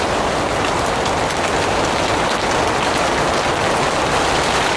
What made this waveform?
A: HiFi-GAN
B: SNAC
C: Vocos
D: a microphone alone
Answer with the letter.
D